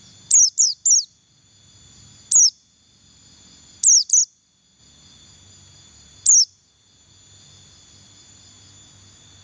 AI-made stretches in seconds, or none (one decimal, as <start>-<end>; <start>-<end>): none

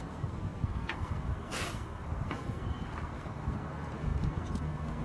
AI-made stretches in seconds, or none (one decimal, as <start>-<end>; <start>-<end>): 0.0-5.0

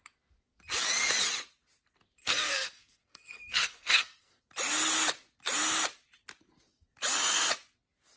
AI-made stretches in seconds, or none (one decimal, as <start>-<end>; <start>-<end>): 2.2-4.4